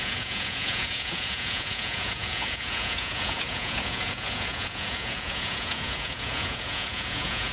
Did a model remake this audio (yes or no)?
yes